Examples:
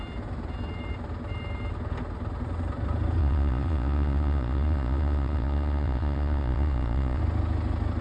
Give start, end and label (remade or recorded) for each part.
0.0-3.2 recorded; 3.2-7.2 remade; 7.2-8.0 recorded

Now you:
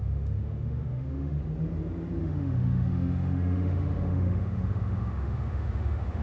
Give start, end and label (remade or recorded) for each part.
0.0-1.4 remade; 1.4-2.2 recorded; 2.2-6.2 remade

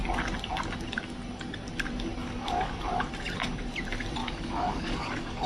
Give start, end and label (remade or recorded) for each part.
0.0-2.2 recorded; 2.2-2.8 remade; 2.8-4.2 recorded; 4.2-5.5 remade

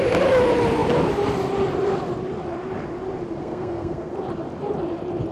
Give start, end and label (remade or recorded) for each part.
0.0-3.4 recorded; 3.4-4.1 remade; 4.1-5.3 recorded

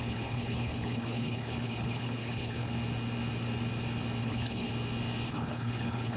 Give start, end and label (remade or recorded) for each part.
0.0-2.7 remade; 2.7-4.2 recorded; 4.2-4.7 remade; 4.7-5.3 recorded; 5.3-6.2 remade

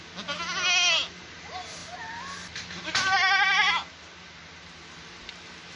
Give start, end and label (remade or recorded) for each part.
0.0-5.8 recorded